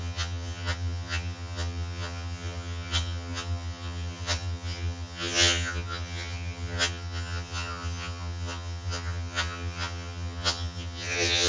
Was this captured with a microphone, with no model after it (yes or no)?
no